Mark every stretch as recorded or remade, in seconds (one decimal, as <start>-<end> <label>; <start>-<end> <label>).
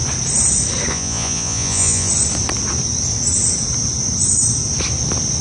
0.0-0.9 recorded; 0.9-2.1 remade; 2.1-5.4 recorded